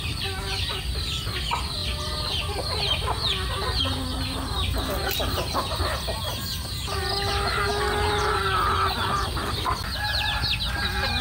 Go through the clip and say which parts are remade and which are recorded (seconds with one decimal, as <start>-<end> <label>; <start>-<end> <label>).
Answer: 0.0-11.2 recorded